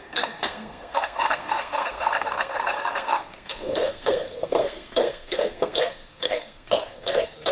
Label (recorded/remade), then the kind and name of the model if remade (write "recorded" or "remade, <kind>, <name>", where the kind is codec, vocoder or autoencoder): remade, codec, SNAC